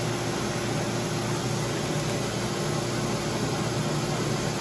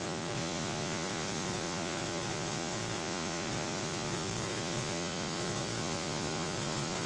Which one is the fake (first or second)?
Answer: second